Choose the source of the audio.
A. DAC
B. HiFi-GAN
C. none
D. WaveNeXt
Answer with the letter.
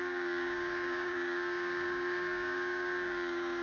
A